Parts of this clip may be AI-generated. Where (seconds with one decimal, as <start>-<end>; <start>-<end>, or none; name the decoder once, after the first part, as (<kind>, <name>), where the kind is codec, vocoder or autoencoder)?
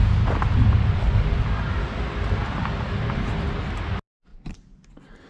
0.0-0.8 (vocoder, BigVGAN v2); 4.3-4.8